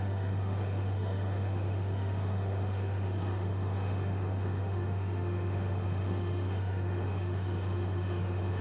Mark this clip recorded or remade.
remade